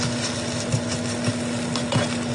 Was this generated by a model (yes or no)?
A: no